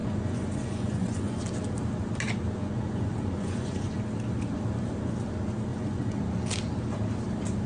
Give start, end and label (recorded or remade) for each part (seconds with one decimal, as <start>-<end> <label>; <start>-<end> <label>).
0.0-1.4 remade; 1.4-2.6 recorded; 2.6-4.0 remade; 4.0-5.7 recorded; 5.7-6.2 remade; 6.2-7.7 recorded